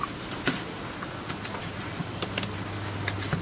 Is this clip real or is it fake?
real